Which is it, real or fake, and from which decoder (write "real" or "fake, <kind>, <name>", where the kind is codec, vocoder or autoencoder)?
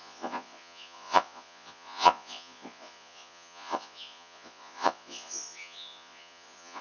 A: fake, vocoder, Vocos